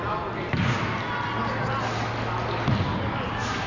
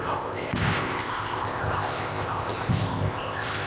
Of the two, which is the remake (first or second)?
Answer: second